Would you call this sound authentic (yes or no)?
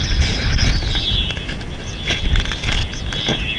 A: yes